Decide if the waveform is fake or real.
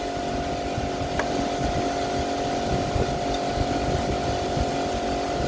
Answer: real